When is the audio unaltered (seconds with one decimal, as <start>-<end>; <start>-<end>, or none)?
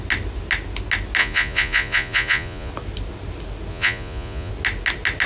0.0-1.2; 2.7-3.7; 4.5-5.3